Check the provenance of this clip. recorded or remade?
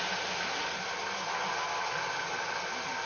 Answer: recorded